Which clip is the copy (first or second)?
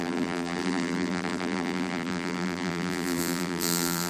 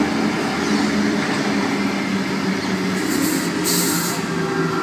first